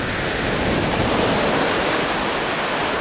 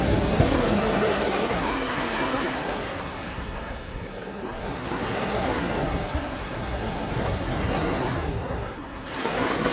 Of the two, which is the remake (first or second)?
second